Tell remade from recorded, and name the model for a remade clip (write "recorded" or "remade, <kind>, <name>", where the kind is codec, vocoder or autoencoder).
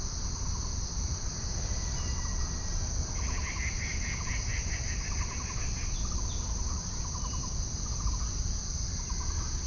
recorded